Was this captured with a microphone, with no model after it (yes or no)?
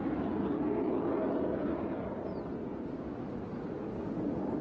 yes